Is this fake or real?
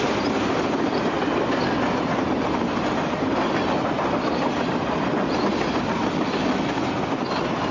real